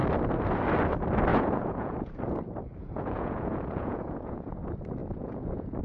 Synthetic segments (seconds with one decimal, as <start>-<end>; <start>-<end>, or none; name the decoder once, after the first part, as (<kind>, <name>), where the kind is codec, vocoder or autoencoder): 1.3-2.1 (vocoder, Vocos); 2.8-4.6; 5.0-5.8

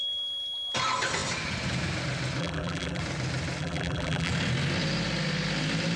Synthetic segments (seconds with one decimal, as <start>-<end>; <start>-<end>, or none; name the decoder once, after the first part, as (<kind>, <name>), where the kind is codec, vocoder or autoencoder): 2.4-3.0 (vocoder, BigVGAN v2); 3.6-4.3

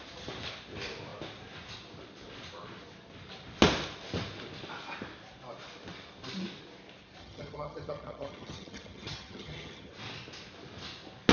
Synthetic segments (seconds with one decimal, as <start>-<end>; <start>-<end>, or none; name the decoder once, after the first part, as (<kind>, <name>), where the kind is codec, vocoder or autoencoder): 7.2-9.9 (vocoder, HiFi-GAN)

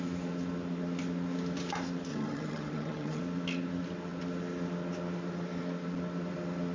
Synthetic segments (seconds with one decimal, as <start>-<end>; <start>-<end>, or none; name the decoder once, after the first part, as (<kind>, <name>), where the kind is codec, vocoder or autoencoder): 2.1-3.2 (vocoder, HiFi-GAN)

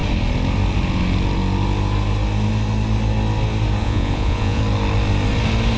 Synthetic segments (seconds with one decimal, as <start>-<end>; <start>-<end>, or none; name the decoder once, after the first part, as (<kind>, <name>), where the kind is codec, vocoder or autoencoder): 3.8-4.6 (vocoder, Vocos)

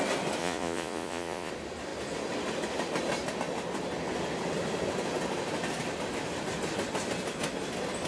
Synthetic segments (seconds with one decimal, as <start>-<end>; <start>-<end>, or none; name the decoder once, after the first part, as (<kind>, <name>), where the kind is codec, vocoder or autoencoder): 0.4-1.5 (vocoder, Vocos)

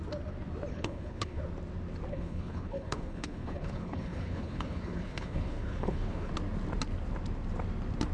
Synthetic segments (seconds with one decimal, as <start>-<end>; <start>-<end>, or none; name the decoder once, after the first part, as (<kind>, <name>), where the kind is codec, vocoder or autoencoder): 0.7-1.4 (codec, HILCodec); 2.1-6.3